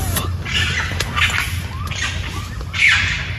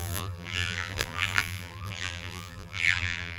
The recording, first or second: first